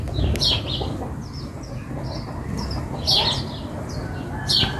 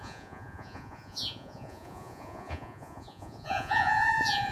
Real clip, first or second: first